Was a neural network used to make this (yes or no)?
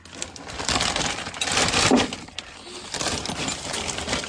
no